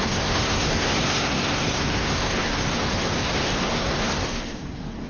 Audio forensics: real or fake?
fake